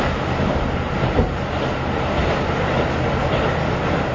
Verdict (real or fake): real